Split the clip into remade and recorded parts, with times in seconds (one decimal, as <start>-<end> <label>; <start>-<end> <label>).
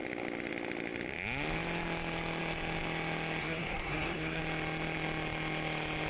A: 0.0-3.4 recorded; 3.4-4.4 remade; 4.4-6.1 recorded